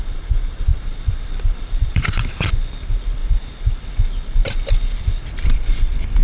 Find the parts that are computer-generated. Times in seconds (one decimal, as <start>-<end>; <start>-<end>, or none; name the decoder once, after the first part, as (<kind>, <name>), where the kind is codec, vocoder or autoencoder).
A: 0.7-2.5 (vocoder, BigVGAN v2); 5.2-5.8